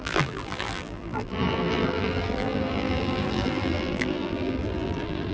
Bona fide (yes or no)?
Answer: no